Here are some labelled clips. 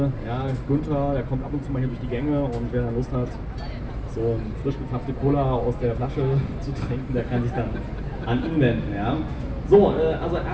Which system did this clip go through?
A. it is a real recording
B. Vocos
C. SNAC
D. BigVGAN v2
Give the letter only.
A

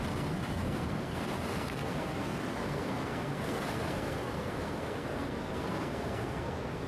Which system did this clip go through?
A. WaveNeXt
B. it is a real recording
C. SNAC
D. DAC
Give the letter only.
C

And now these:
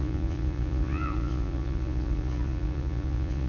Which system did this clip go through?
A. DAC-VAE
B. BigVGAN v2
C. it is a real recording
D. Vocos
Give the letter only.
D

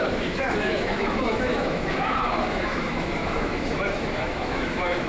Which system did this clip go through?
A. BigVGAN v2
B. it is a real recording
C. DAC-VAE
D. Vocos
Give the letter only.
C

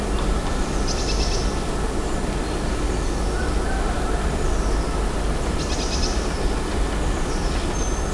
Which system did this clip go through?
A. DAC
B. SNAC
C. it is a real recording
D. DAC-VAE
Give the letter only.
C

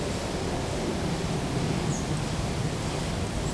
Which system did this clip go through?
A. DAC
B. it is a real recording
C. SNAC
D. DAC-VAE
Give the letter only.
B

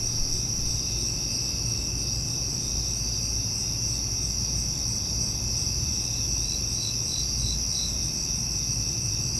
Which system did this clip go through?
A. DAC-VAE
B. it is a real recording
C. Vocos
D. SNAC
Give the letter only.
B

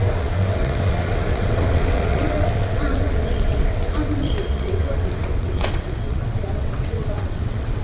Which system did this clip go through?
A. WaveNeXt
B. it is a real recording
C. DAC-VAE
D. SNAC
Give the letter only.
A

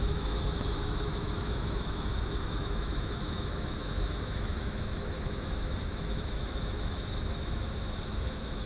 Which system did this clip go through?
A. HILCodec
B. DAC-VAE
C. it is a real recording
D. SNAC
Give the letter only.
B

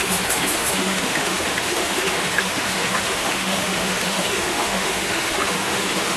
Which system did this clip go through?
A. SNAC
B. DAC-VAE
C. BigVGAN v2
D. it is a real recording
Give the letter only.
B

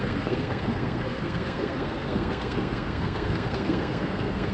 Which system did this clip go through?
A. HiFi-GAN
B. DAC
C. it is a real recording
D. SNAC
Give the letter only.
D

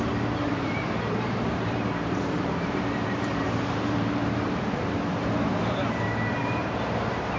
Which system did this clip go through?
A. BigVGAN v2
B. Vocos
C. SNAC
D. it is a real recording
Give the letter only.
A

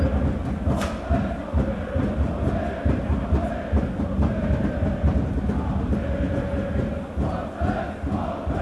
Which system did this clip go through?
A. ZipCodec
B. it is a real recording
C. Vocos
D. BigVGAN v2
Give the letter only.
B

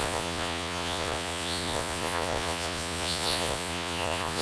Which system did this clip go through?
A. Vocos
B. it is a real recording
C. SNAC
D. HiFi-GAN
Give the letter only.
A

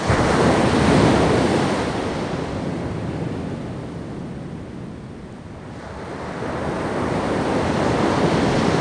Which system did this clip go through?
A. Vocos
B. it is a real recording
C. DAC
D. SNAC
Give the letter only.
B